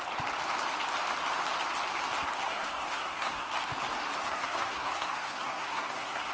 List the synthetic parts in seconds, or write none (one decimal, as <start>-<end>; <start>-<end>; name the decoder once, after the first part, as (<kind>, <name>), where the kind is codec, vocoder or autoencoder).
2.4-3.5 (codec, SNAC); 4.2-6.3